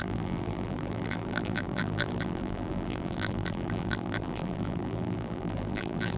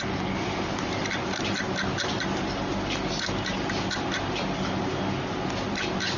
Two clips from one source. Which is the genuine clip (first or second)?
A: second